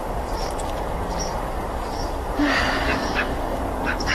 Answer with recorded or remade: remade